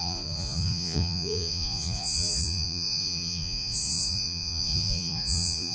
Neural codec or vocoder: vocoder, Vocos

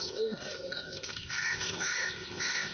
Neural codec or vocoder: codec, ZipCodec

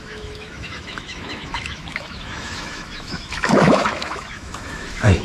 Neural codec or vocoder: autoencoder, DAC-VAE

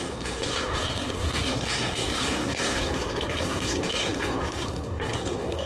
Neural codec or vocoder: codec, SNAC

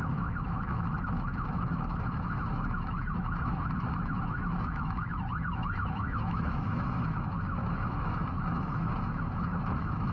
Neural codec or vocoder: autoencoder, DAC-VAE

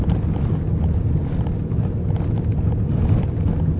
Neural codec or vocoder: none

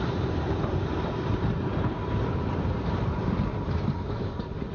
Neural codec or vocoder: vocoder, BigVGAN v2